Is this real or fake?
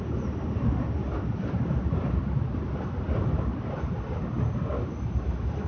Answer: real